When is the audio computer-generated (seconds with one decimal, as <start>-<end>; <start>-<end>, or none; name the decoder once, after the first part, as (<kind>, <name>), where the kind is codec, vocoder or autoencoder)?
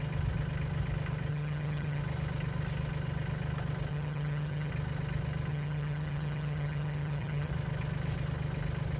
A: 1.3-2.0 (vocoder, HiFi-GAN); 3.9-4.7; 5.5-7.5